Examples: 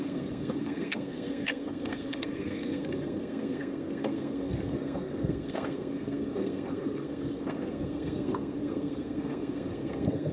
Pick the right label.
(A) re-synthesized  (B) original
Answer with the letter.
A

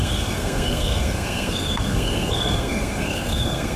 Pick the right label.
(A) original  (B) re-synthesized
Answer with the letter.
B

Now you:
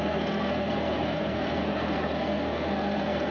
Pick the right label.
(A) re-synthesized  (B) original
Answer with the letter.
A